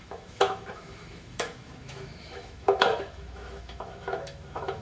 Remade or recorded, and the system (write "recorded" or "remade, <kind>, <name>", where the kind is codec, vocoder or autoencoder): remade, autoencoder, DAC-VAE